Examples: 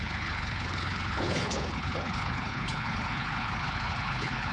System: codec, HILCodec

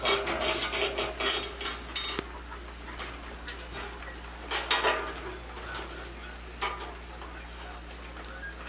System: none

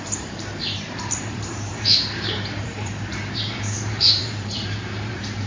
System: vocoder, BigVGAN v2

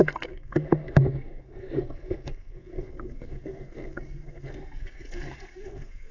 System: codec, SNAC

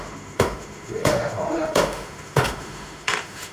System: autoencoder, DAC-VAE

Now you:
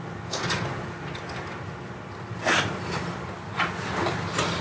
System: none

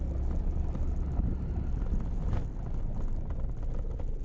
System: none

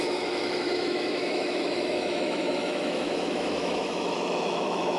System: autoencoder, DAC-VAE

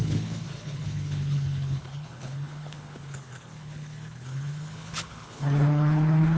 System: codec, HILCodec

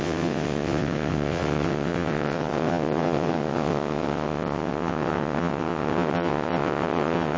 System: vocoder, WaveNeXt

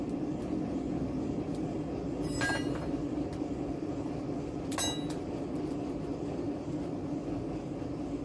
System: none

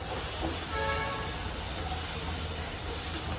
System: none